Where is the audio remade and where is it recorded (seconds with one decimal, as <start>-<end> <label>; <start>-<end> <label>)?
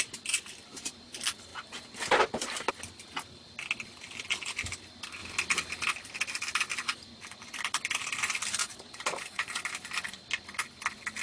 0.0-8.6 recorded; 8.6-9.6 remade; 9.6-11.2 recorded